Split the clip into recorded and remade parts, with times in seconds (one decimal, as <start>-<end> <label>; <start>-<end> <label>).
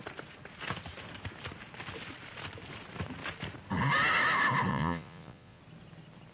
0.0-4.7 recorded; 4.7-5.6 remade; 5.6-6.3 recorded